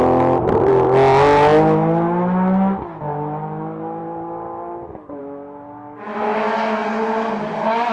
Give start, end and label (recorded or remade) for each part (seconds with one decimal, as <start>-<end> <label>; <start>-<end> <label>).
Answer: 0.0-7.9 recorded